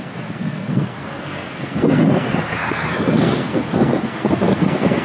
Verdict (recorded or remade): remade